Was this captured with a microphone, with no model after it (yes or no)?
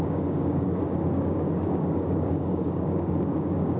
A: no